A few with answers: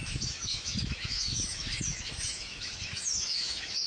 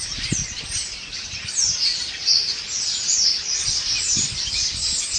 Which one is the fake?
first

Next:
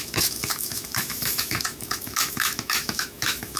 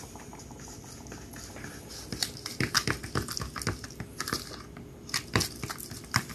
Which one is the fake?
first